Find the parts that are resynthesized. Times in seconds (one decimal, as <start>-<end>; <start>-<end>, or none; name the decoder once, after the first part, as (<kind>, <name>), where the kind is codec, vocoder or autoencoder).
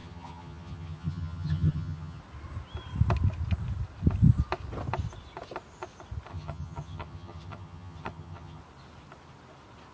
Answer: 0.0-2.2 (vocoder, HiFi-GAN); 6.3-8.6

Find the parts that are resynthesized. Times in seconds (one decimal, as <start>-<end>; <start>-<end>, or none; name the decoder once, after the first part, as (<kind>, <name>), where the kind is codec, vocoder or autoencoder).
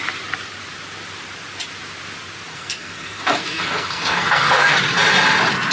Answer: 2.5-4.8 (codec, SNAC)